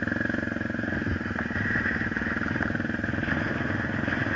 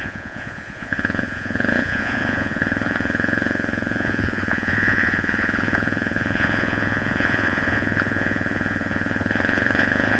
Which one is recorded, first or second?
first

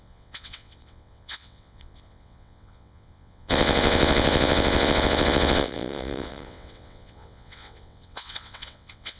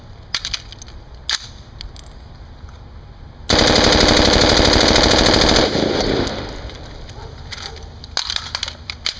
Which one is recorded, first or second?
second